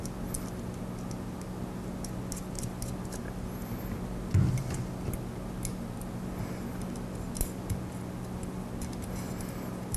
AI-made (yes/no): no